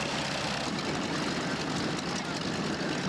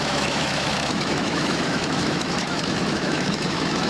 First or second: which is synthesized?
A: second